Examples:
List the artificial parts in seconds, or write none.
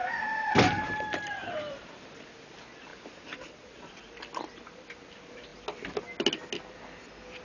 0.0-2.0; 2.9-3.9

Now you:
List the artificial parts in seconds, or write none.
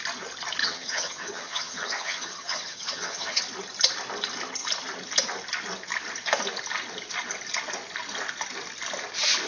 0.6-3.4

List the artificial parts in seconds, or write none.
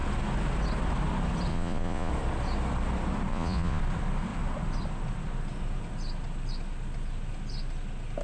1.5-2.1; 3.3-3.8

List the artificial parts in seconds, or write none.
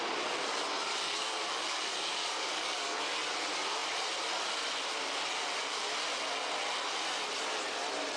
0.9-3.0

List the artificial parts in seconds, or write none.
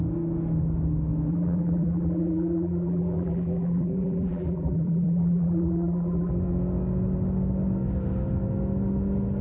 1.3-6.3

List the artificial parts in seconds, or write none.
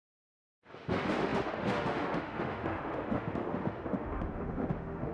0.0-5.1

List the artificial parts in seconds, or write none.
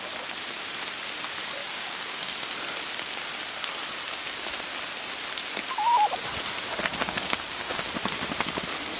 1.6-2.3; 6.9-7.9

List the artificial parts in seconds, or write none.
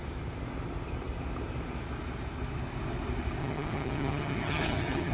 3.4-5.1